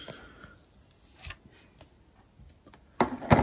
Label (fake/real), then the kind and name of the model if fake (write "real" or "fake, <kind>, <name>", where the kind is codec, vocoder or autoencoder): real